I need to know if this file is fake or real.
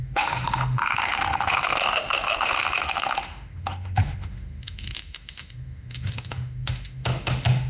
fake